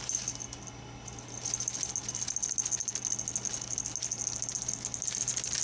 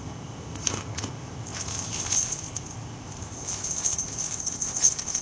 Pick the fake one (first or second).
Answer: second